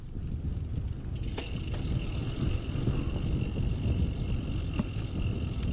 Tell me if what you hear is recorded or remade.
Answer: recorded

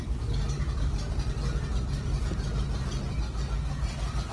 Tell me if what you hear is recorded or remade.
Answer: recorded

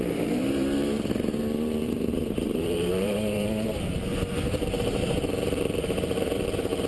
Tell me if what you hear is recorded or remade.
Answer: remade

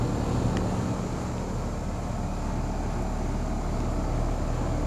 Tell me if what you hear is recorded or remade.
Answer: recorded